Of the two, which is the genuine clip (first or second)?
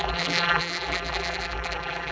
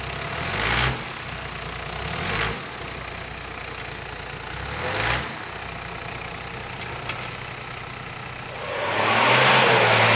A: second